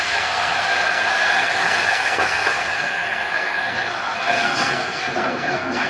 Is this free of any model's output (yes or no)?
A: no